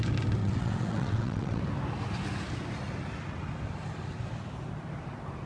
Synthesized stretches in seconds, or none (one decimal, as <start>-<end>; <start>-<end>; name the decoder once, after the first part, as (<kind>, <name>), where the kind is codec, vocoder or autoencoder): 0.4-1.6 (vocoder, WaveNeXt)